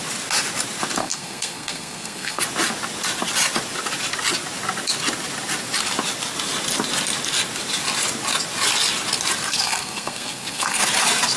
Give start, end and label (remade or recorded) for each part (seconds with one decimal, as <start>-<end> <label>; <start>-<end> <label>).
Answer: 0.0-1.0 recorded; 1.0-2.4 remade; 2.4-9.5 recorded; 9.5-10.8 remade; 10.8-11.4 recorded